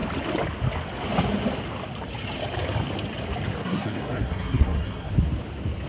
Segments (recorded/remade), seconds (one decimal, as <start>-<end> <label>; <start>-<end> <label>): 0.0-3.6 recorded; 3.6-5.1 remade; 5.1-5.9 recorded